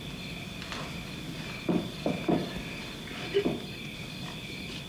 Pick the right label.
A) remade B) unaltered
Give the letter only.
B